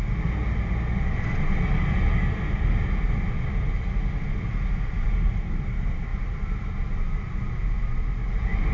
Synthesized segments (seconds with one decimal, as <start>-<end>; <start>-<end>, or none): none